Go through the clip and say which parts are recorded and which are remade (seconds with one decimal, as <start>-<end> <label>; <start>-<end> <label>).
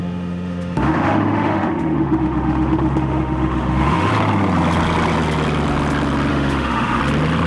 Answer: 0.0-4.1 remade; 4.1-6.3 recorded; 6.3-7.0 remade; 7.0-7.5 recorded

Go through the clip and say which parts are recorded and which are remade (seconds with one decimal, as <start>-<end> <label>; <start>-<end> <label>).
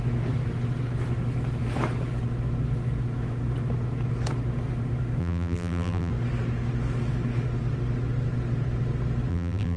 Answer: 0.0-5.2 recorded; 5.2-6.1 remade; 6.1-9.3 recorded; 9.3-9.8 remade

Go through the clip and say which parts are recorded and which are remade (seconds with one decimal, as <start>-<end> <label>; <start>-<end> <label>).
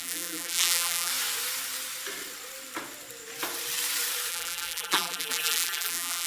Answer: 0.0-1.1 remade; 1.1-4.3 recorded; 4.3-6.3 remade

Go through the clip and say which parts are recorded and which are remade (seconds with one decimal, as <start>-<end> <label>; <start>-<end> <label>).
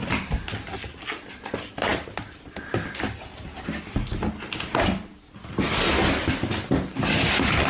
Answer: 0.0-7.7 recorded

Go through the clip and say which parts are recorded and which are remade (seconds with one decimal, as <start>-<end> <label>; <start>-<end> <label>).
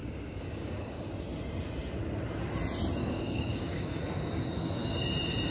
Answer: 0.0-1.1 remade; 1.1-3.0 recorded; 3.0-4.0 remade; 4.0-5.5 recorded